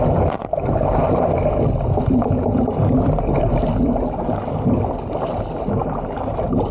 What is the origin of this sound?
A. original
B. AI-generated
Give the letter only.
B